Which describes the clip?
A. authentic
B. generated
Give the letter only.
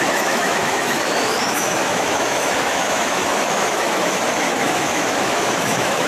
B